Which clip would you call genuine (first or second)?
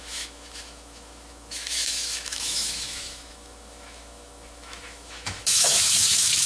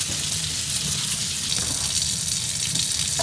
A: second